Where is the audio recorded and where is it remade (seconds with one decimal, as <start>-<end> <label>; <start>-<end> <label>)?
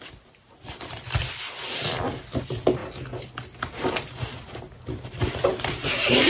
0.0-0.4 recorded; 0.4-1.0 remade; 1.0-5.5 recorded; 5.5-6.3 remade